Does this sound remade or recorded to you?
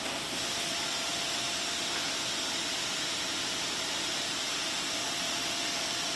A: recorded